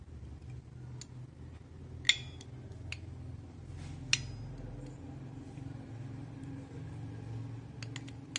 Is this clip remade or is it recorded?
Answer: recorded